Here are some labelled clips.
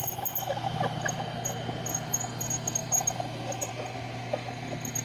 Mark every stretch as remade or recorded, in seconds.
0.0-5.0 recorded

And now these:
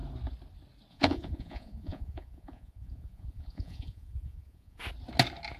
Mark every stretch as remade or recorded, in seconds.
0.0-0.9 recorded; 0.9-4.8 remade; 4.8-5.6 recorded

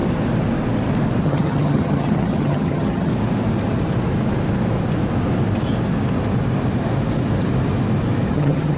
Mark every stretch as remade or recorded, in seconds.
0.0-1.2 recorded; 1.2-3.1 remade; 3.1-8.3 recorded; 8.3-8.8 remade

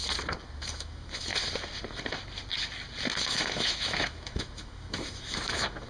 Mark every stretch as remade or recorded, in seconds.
0.0-0.7 recorded; 0.7-1.3 remade; 1.3-3.2 recorded; 3.2-5.9 remade

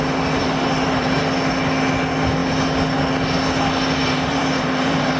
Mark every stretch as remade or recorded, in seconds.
0.0-0.4 recorded; 0.4-1.2 remade; 1.2-4.0 recorded; 4.0-5.2 remade

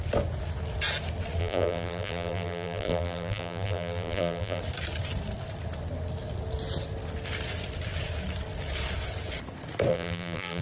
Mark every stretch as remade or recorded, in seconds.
0.0-1.4 recorded; 1.4-4.6 remade; 4.6-9.9 recorded; 9.9-10.6 remade

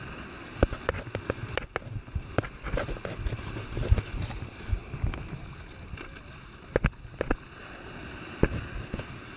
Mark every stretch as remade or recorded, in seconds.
0.0-9.4 recorded

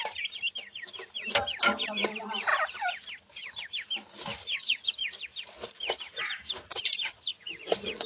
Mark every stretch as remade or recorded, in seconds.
0.0-7.3 recorded; 7.3-8.1 remade